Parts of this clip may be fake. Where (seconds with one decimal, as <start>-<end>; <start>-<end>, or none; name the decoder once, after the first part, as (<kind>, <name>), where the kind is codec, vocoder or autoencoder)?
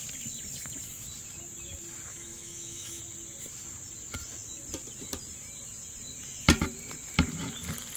2.1-3.0 (autoencoder, DAC-VAE)